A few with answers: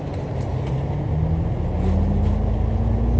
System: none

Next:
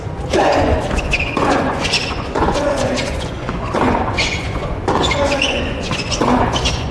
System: vocoder, Vocos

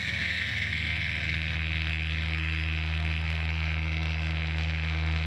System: codec, SNAC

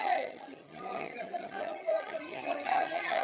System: vocoder, HiFi-GAN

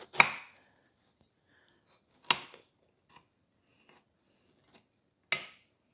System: none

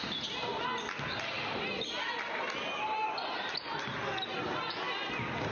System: none